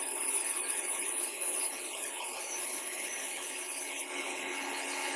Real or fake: fake